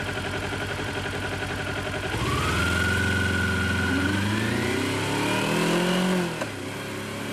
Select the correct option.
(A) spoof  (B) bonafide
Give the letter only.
B